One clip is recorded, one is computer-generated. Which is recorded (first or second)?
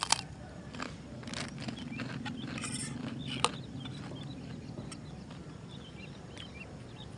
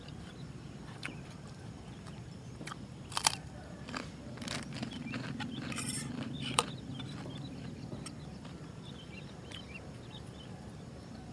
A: first